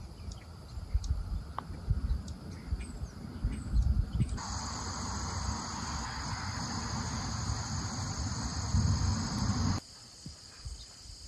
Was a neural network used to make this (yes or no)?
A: no